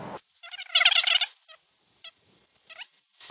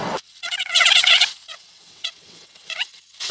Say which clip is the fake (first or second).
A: second